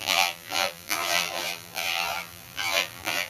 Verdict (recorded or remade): remade